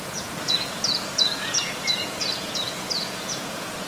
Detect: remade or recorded remade